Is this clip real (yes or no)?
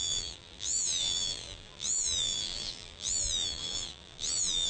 no